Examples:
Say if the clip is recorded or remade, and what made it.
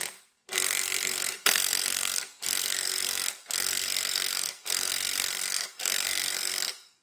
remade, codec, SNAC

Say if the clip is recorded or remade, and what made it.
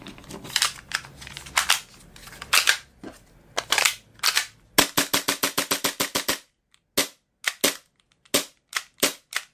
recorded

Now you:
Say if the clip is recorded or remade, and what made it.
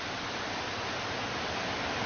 recorded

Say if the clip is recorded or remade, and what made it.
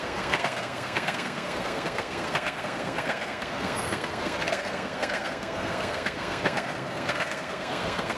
remade, codec, SNAC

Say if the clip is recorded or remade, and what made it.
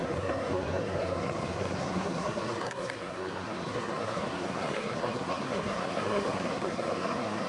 remade, codec, SNAC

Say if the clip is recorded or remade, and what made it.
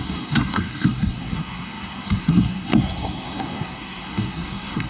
remade, codec, SNAC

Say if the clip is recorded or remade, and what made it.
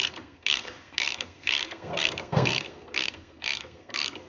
remade, codec, SNAC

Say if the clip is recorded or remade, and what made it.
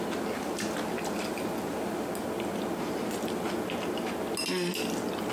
recorded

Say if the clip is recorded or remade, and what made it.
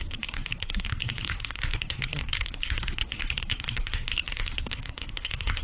remade, codec, SNAC